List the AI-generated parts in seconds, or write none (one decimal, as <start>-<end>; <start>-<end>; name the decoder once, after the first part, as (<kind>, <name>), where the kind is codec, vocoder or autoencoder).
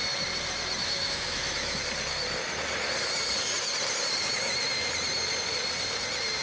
0.8-1.8 (autoencoder, DAC-VAE)